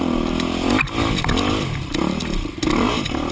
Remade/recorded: recorded